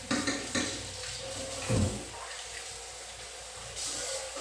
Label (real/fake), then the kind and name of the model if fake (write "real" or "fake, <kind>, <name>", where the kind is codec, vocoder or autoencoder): real